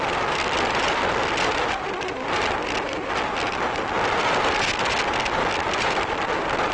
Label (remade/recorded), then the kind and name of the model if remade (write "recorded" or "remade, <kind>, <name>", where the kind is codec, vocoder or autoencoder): recorded